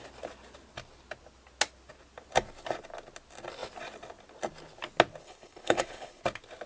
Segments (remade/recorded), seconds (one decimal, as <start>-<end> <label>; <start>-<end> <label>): 0.0-5.2 recorded; 5.2-6.2 remade; 6.2-6.7 recorded